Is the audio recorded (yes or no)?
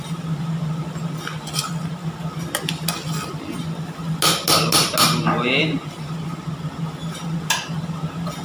yes